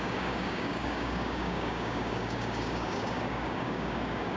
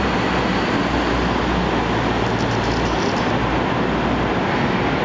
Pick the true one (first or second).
second